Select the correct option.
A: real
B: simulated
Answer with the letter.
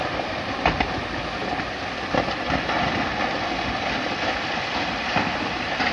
A